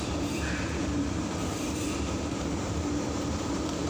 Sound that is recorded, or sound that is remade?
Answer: remade